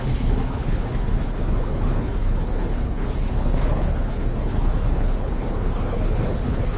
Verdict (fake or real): fake